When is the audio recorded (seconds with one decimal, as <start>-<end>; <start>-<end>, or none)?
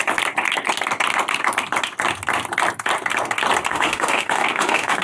0.0-3.7